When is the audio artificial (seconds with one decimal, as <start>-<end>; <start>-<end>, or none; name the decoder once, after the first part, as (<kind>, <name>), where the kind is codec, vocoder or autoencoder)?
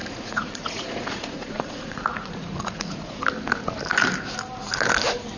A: 0.0-3.2 (vocoder, Vocos)